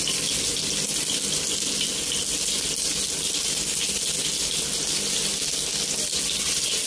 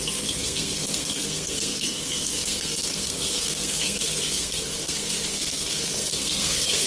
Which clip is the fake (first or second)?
second